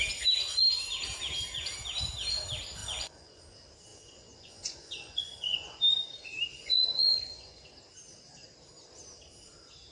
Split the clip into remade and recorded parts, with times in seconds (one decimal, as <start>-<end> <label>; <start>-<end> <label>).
0.0-2.8 recorded; 2.8-3.4 remade; 3.4-3.9 recorded; 3.9-5.8 remade; 5.8-6.5 recorded; 6.5-7.6 remade; 7.6-9.9 recorded